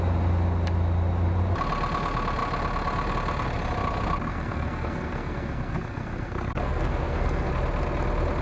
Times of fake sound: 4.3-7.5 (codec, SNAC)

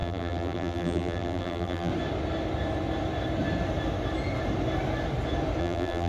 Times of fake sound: 0.0-1.9 (vocoder, BigVGAN v2); 5.6-6.1

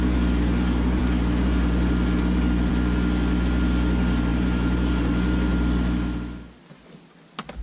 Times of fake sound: none